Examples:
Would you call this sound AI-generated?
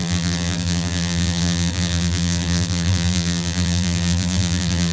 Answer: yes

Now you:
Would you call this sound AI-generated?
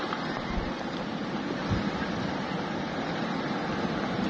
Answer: no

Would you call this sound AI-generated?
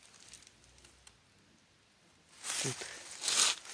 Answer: no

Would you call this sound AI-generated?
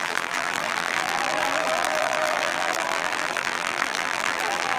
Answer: yes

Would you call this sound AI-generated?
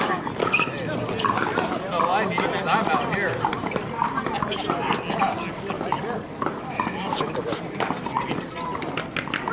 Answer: no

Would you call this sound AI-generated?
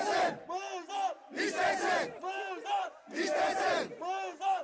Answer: no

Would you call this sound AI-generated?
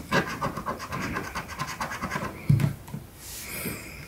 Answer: no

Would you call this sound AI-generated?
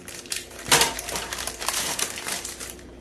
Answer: yes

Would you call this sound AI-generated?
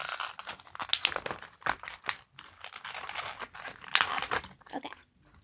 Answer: no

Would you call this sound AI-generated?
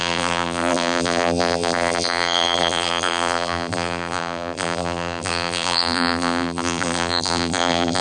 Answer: yes